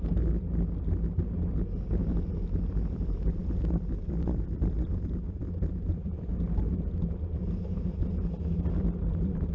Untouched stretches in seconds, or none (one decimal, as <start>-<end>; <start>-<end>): 0.0-3.4; 7.6-9.5